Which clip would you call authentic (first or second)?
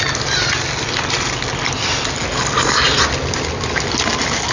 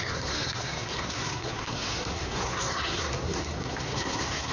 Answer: first